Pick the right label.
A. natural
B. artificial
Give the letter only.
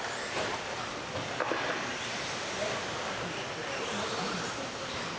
A